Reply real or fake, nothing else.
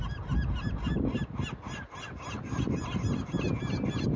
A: real